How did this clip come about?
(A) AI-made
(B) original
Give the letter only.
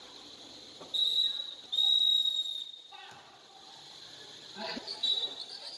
B